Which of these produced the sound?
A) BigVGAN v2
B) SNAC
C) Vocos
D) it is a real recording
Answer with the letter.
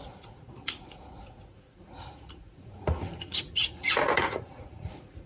C